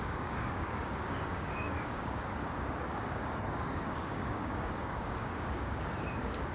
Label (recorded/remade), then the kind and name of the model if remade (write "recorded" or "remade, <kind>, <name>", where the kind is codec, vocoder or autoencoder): remade, codec, DAC